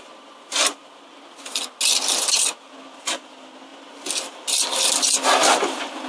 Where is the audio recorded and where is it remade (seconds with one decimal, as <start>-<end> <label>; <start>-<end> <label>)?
0.0-6.1 recorded